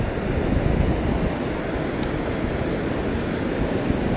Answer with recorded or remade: recorded